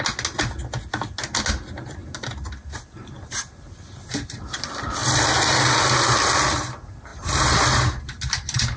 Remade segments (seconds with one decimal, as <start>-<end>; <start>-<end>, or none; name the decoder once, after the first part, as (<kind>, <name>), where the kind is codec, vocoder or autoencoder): none